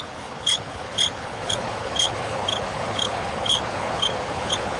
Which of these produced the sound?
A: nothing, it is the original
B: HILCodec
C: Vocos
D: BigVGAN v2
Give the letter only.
B